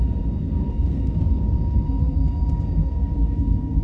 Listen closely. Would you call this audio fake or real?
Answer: fake